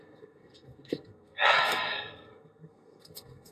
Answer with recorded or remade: remade